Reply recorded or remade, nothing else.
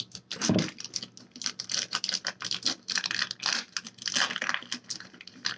recorded